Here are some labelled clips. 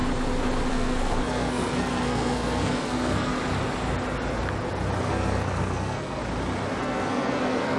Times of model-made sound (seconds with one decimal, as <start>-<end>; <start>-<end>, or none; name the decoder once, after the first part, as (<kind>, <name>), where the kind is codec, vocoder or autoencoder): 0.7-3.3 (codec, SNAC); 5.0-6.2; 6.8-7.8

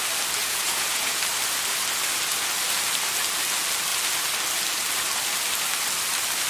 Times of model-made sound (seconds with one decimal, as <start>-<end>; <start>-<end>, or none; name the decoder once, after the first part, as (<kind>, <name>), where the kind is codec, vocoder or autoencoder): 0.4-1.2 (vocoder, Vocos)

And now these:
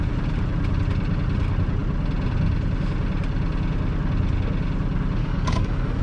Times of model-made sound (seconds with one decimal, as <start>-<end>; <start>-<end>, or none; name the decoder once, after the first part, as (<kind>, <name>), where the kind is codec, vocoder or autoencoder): 5.2-6.0 (codec, DAC)

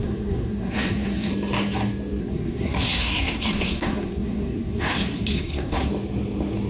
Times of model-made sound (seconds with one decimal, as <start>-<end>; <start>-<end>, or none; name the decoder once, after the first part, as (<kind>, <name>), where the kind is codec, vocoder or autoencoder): 0.0-1.3 (codec, SNAC); 2.2-5.9

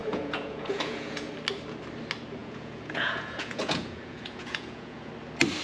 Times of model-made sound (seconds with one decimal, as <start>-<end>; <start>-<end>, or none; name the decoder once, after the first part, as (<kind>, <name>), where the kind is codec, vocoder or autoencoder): 0.0-1.3 (vocoder, Vocos); 2.4-5.1

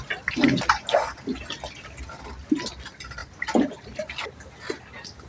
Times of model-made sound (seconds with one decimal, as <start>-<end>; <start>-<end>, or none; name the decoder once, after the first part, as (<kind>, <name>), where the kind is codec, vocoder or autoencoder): none